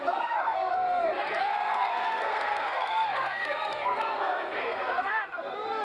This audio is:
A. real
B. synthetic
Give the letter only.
B